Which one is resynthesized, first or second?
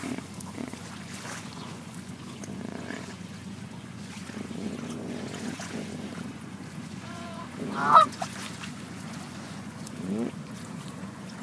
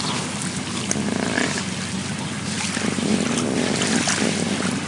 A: first